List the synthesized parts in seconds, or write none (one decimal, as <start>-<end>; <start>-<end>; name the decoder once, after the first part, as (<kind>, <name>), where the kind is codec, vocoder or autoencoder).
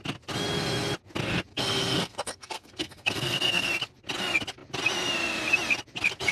1.5-3.7 (codec, SNAC)